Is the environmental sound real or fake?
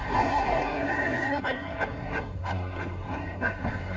fake